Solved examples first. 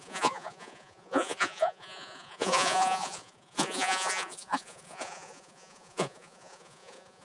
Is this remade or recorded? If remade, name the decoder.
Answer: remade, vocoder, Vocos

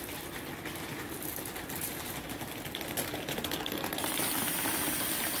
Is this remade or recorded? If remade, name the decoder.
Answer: recorded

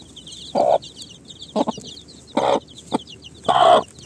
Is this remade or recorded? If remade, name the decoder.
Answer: recorded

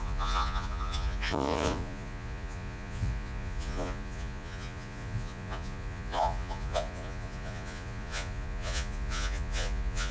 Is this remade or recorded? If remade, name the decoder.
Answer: remade, vocoder, Vocos